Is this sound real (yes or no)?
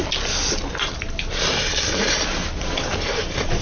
yes